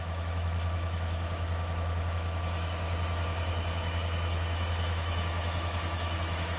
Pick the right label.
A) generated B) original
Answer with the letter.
A